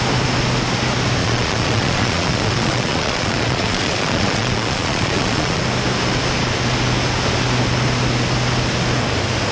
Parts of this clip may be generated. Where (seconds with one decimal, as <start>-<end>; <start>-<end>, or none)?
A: 1.2-5.6